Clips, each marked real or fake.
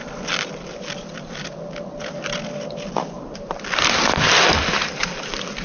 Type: fake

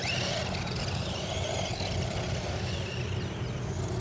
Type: real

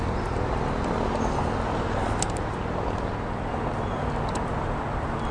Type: real